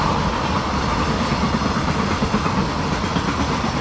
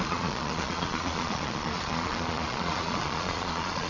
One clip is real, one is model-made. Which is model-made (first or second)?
second